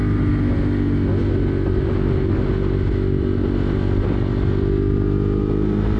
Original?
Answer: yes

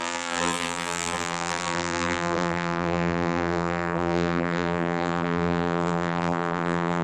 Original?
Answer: no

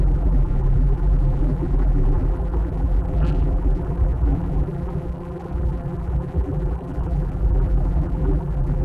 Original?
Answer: no